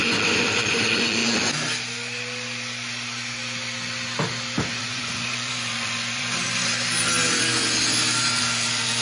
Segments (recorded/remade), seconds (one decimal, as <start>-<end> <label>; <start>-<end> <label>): 0.0-1.2 remade; 1.2-4.7 recorded; 4.7-6.7 remade; 6.7-8.4 recorded; 8.4-9.0 remade